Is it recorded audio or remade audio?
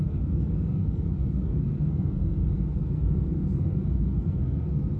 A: remade